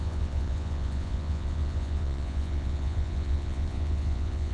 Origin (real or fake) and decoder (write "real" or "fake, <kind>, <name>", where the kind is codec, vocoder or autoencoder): fake, vocoder, Vocos